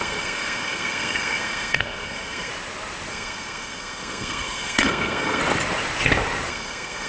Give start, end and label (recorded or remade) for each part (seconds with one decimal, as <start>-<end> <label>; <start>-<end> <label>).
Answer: 0.0-2.5 remade; 2.5-3.1 recorded; 3.1-5.4 remade; 5.4-6.5 recorded; 6.5-7.1 remade